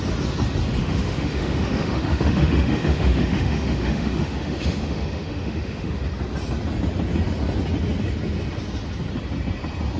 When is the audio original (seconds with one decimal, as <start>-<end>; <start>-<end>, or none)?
0.0-0.8; 6.0-10.0